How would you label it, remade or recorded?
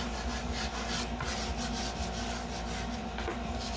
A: recorded